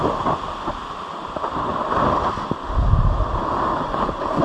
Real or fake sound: real